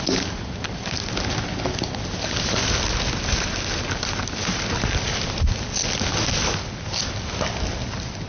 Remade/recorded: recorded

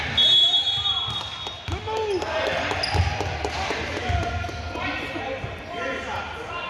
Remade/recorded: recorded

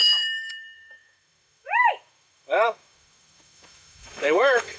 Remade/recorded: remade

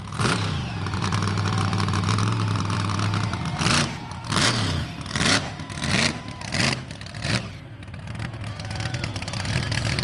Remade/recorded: remade